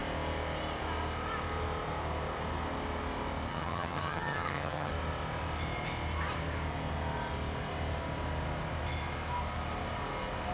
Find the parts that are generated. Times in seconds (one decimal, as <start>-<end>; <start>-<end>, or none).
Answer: 3.5-4.9